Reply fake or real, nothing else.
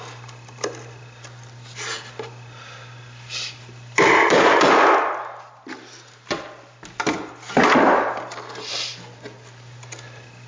real